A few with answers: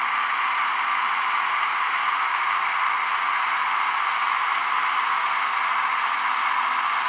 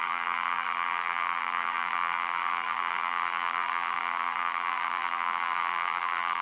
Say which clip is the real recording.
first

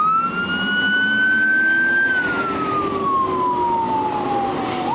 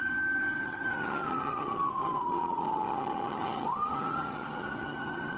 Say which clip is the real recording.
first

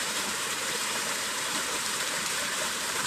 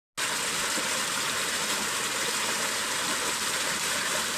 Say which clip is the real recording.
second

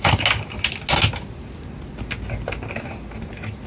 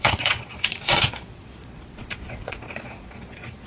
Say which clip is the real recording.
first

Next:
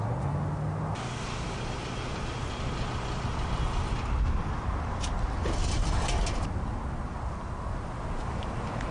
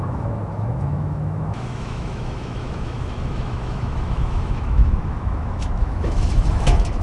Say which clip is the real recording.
first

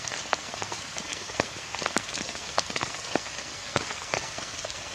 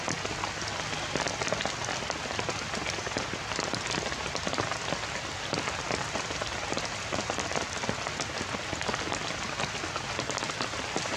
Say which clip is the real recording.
second